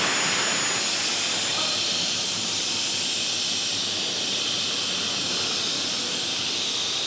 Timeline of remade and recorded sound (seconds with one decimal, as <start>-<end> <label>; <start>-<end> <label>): 0.0-1.5 recorded; 1.5-2.6 remade; 2.6-7.1 recorded